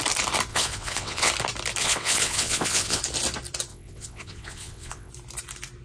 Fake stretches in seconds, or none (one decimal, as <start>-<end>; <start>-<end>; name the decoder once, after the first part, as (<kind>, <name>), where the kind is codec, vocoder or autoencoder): 0.5-1.3 (vocoder, WaveNeXt); 1.8-3.0; 3.7-5.1